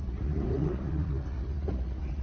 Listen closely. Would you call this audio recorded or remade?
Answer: remade